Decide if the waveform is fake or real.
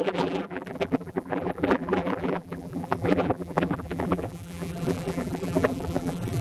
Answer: fake